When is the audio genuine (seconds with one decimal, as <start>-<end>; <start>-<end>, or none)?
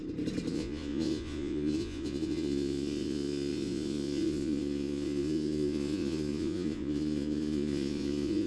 0.0-0.5